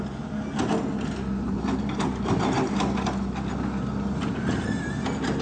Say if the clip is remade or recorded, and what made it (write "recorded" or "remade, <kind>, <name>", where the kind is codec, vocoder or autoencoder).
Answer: recorded